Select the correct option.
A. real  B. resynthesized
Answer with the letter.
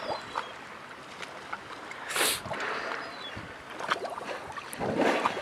A